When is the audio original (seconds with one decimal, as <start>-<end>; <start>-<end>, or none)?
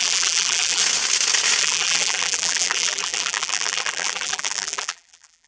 0.8-1.6